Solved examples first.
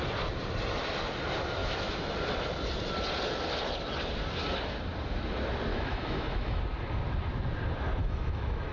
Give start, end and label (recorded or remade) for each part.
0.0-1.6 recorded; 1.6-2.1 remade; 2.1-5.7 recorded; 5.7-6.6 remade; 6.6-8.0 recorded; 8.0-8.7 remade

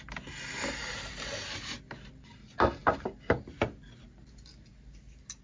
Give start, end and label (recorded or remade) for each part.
0.0-5.4 recorded

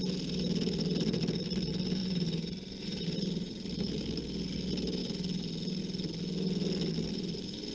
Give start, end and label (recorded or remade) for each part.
0.0-2.0 recorded; 2.0-4.2 remade; 4.2-7.7 recorded